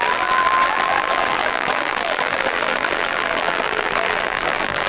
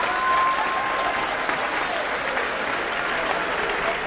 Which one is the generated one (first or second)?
first